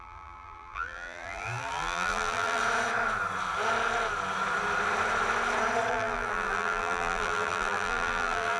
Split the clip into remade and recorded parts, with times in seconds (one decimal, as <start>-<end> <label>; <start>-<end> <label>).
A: 0.0-2.6 remade; 2.6-5.9 recorded; 5.9-8.6 remade